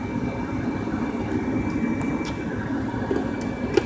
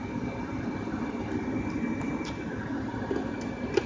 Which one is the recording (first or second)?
first